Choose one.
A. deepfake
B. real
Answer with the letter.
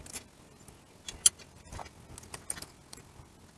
B